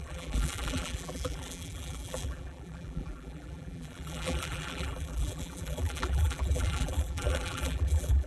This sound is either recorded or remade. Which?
remade